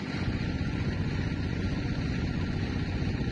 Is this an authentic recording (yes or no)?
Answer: no